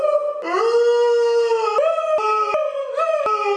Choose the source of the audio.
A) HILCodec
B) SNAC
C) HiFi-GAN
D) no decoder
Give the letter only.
D